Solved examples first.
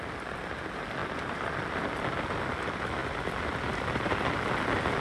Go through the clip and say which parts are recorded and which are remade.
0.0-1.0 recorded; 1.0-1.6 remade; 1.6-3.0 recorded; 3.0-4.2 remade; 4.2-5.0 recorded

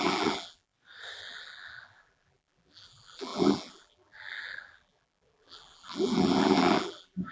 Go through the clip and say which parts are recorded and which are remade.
0.0-0.7 remade; 0.7-1.2 recorded; 1.2-7.3 remade

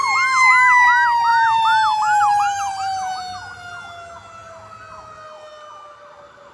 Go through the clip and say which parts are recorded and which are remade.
0.0-1.3 recorded; 1.3-3.2 remade; 3.2-6.5 recorded

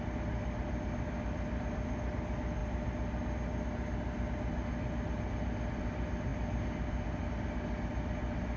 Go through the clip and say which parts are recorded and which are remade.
0.0-8.6 recorded

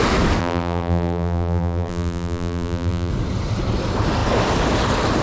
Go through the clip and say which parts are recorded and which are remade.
0.0-0.4 recorded; 0.4-3.1 remade; 3.1-5.2 recorded

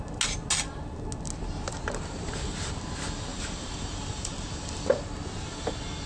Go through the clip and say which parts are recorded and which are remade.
0.0-1.8 recorded; 1.8-2.8 remade; 2.8-3.3 recorded; 3.3-4.8 remade; 4.8-6.1 recorded

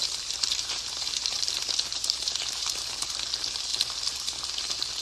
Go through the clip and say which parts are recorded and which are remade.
0.0-3.0 remade; 3.0-3.7 recorded; 3.7-5.0 remade

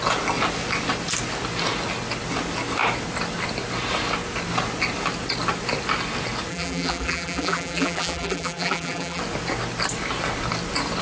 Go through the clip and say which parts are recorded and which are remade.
0.0-6.5 recorded; 6.5-9.2 remade; 9.2-11.0 recorded